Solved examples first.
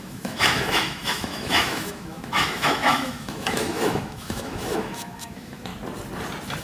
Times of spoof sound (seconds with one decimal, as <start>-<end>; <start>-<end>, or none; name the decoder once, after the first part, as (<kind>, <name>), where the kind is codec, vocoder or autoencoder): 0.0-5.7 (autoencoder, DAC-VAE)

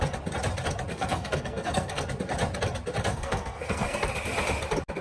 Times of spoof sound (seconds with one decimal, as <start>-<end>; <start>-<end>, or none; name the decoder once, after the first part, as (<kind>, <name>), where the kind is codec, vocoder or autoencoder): 0.9-2.0 (codec, SNAC); 3.1-4.1

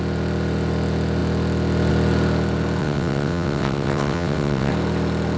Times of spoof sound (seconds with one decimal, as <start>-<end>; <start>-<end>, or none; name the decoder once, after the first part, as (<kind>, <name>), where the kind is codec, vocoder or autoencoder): 2.8-4.7 (vocoder, WaveNeXt)

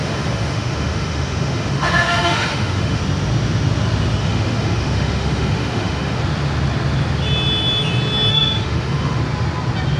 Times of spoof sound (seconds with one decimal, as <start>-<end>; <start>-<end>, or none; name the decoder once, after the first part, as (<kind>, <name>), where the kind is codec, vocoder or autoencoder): 0.0-3.0 (autoencoder, DAC-VAE); 4.2-6.2; 8.3-9.2